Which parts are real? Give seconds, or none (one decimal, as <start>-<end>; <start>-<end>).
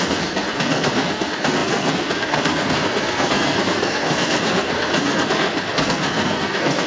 none